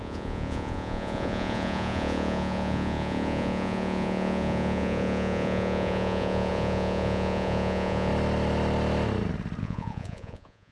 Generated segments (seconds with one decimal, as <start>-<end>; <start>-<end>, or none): 0.0-8.1; 9.6-10.7